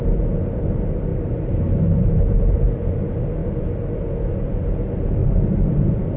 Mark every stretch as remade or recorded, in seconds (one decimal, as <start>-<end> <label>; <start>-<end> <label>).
0.0-6.2 recorded